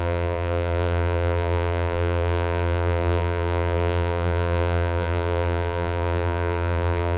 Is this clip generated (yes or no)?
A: yes